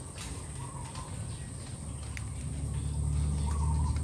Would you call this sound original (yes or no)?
yes